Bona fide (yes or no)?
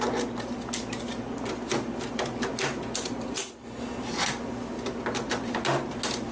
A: yes